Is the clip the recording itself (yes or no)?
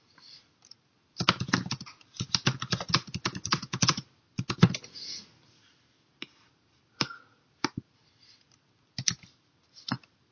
yes